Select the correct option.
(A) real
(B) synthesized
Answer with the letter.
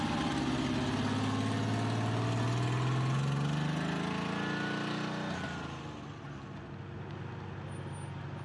A